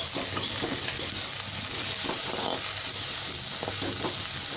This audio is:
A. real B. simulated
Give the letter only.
A